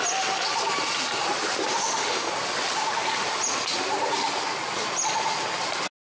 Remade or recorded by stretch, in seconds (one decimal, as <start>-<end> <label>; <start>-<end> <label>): 0.0-1.7 recorded; 1.7-2.3 remade; 2.3-6.1 recorded